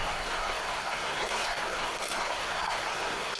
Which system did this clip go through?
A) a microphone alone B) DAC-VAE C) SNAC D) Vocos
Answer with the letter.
C